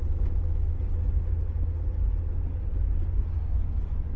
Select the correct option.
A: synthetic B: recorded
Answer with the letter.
B